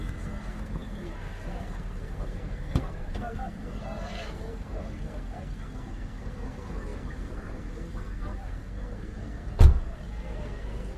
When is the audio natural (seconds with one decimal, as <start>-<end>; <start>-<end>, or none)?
none